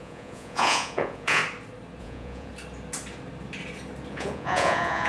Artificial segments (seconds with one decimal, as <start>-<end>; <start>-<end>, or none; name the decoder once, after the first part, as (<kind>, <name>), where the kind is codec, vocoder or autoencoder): 0.0-1.4 (vocoder, Vocos); 2.0-2.5; 4.1-5.1